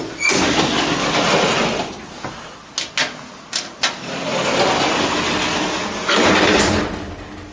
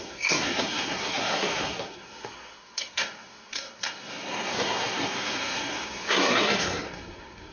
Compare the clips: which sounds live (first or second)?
first